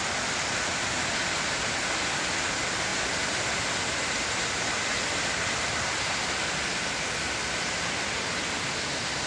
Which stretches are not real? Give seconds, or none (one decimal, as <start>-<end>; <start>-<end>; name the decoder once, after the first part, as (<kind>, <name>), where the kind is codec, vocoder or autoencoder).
2.9-3.5 (vocoder, BigVGAN v2)